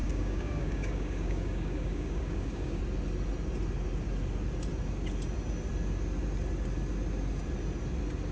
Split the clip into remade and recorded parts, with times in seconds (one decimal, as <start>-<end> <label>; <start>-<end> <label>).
0.0-2.8 remade; 2.8-8.3 recorded